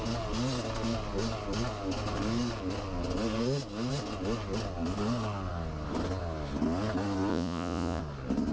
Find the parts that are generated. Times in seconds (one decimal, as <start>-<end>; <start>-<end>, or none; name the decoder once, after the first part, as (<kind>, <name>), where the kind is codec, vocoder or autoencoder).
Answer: 7.3-8.0 (vocoder, Vocos)